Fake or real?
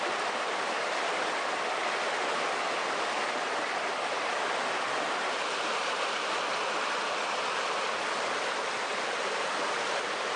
real